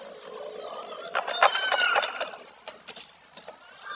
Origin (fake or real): real